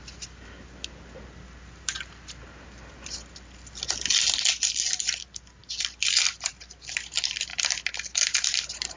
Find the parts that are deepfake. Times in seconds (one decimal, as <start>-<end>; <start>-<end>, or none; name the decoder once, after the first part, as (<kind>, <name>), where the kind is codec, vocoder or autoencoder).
none